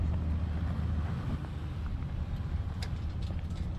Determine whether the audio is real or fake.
real